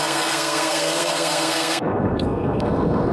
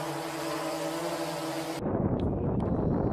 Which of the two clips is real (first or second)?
second